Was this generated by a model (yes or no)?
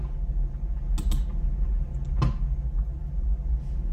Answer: no